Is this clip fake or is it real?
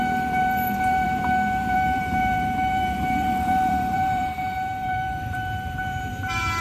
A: fake